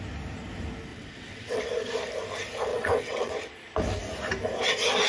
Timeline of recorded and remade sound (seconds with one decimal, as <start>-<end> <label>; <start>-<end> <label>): 0.0-0.9 recorded; 0.9-1.6 remade; 1.6-2.7 recorded; 2.7-3.3 remade; 3.3-5.1 recorded